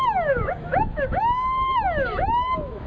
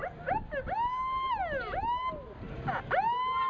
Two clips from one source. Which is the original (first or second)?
second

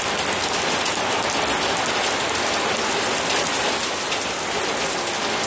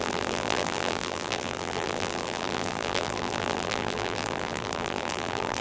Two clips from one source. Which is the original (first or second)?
first